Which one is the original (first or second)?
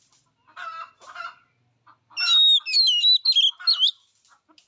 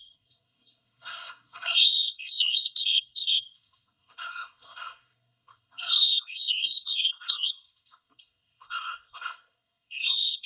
first